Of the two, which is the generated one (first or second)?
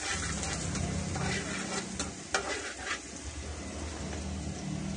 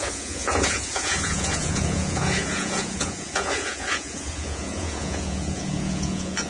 second